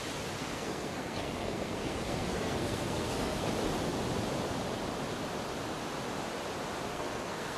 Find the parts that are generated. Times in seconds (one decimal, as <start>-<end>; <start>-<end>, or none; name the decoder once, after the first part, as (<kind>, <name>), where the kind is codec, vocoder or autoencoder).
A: 0.4-3.5 (codec, SNAC); 6.9-7.6